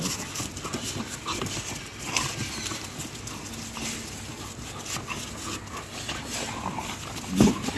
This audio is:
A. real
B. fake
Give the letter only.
A